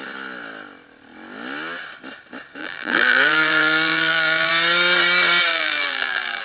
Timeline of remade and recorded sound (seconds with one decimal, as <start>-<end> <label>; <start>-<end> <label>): 0.0-2.6 recorded; 2.6-4.5 remade; 4.5-5.5 recorded; 5.5-6.4 remade